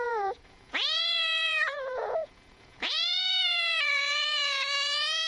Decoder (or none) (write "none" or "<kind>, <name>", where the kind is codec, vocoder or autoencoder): vocoder, Vocos